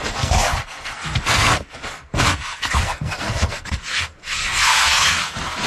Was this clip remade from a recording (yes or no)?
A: yes